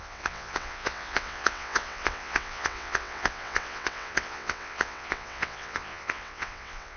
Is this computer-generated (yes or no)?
yes